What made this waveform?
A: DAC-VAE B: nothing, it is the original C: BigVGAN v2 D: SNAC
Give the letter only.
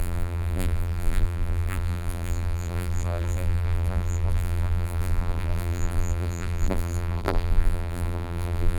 C